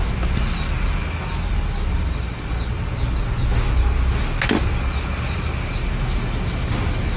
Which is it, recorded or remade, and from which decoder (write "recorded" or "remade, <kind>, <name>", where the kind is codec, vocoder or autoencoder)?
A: recorded